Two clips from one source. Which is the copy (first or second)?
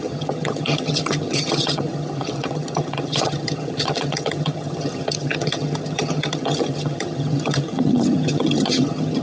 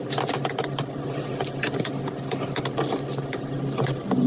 first